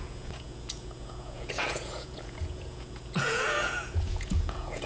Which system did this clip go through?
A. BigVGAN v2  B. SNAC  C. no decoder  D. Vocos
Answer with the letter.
D